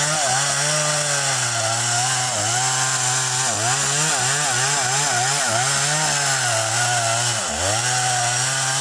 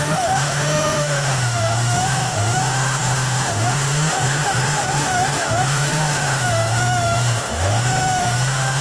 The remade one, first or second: second